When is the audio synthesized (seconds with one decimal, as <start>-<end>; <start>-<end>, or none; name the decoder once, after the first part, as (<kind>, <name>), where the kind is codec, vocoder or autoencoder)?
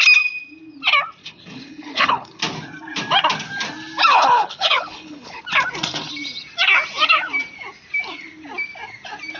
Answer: 1.2-2.4 (codec, HILCodec); 4.1-5.4